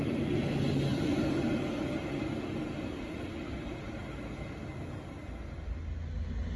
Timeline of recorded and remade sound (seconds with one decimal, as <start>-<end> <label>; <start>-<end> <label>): 0.0-6.6 recorded